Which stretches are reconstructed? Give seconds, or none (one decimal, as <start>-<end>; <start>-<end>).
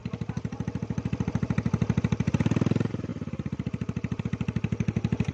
0.0-2.0